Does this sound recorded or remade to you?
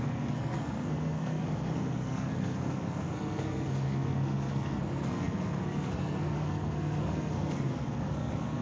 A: remade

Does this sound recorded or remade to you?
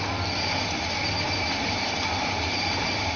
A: recorded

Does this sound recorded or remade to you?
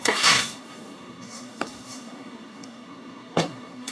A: remade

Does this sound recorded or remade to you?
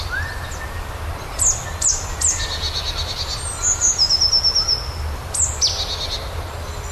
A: recorded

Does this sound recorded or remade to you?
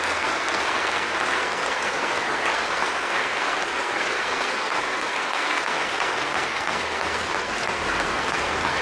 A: remade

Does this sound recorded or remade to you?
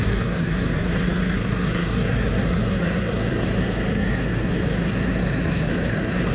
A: remade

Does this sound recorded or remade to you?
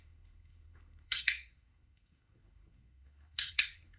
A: remade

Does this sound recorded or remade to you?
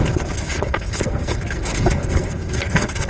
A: remade